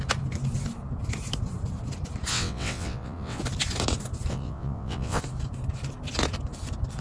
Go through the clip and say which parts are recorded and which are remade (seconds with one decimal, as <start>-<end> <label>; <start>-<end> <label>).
0.0-2.3 recorded; 2.3-3.4 remade; 3.4-4.3 recorded; 4.3-5.2 remade; 5.2-7.0 recorded